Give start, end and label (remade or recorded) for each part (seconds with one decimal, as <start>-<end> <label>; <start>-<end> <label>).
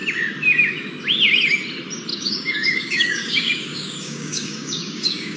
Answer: 0.0-2.1 recorded; 2.1-5.4 remade